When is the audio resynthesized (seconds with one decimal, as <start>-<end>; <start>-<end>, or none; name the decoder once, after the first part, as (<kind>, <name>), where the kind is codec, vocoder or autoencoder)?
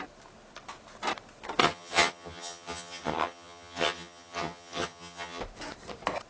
1.6-5.4 (vocoder, HiFi-GAN)